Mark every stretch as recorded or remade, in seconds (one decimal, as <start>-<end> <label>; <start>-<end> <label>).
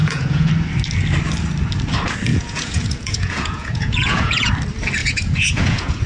0.0-0.5 remade; 0.5-2.3 recorded; 2.3-4.5 remade; 4.5-5.0 recorded; 5.0-6.1 remade